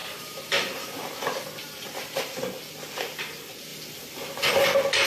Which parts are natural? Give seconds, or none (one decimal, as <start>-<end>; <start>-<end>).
1.0-1.6; 2.4-5.1